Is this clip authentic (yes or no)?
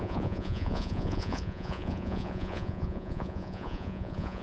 no